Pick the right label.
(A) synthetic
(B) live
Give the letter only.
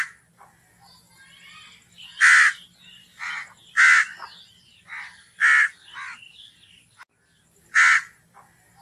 B